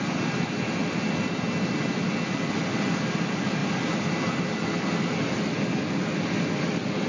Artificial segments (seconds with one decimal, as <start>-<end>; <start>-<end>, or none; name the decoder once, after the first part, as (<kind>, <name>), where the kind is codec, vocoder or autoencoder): none